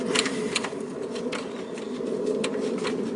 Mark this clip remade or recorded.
remade